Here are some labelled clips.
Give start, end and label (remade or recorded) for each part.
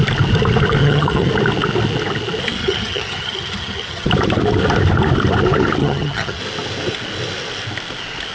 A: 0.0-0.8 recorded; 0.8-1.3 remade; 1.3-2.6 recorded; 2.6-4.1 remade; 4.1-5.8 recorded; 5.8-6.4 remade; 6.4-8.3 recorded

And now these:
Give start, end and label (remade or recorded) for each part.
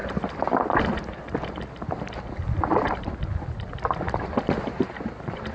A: 0.0-5.5 recorded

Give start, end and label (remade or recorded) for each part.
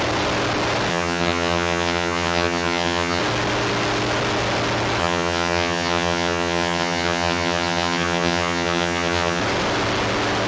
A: 0.0-0.9 recorded; 0.9-3.2 remade; 3.2-5.0 recorded; 5.0-9.4 remade; 9.4-10.5 recorded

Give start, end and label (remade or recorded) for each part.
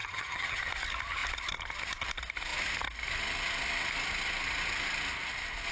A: 0.0-0.6 remade; 0.6-5.7 recorded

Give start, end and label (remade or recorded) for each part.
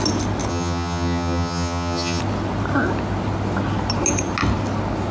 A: 0.0-0.5 recorded; 0.5-2.2 remade; 2.2-5.1 recorded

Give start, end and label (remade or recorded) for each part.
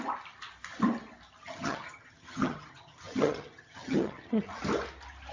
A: 0.0-1.4 recorded; 1.4-4.6 remade; 4.6-5.3 recorded